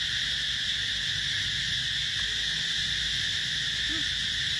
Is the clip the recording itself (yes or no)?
yes